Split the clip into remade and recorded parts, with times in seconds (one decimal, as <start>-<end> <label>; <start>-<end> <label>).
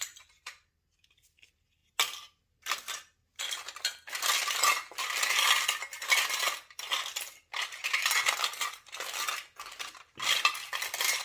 0.0-11.2 recorded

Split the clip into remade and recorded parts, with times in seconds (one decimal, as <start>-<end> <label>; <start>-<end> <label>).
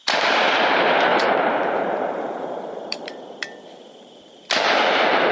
0.0-1.1 recorded; 1.1-4.3 remade; 4.3-5.3 recorded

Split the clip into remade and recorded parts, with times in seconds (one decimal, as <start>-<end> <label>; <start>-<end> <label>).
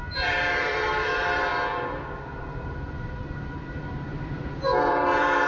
0.0-1.5 remade; 1.5-2.4 recorded; 2.4-5.5 remade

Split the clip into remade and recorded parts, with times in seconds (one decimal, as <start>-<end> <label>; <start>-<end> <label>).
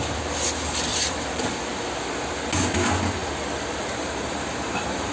0.0-0.9 recorded; 0.9-1.5 remade; 1.5-3.2 recorded; 3.2-5.1 remade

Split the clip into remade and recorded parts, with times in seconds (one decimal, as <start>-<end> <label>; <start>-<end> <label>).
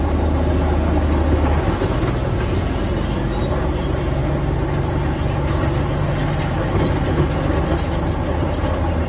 0.0-9.1 recorded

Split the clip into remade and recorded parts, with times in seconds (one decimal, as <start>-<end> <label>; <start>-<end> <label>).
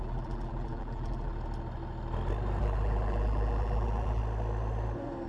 0.0-1.3 remade; 1.3-2.6 recorded; 2.6-4.2 remade; 4.2-5.3 recorded